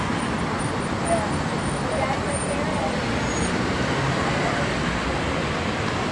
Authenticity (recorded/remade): recorded